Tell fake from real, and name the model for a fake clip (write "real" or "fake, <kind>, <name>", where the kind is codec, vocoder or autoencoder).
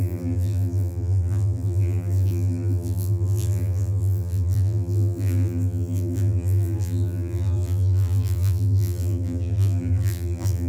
fake, vocoder, BigVGAN v2